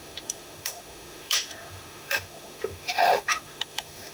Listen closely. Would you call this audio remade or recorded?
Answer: remade